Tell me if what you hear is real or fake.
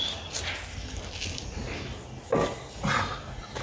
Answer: real